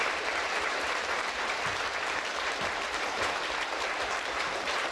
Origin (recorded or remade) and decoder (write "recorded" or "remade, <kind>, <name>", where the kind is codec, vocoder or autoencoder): remade, vocoder, BigVGAN v2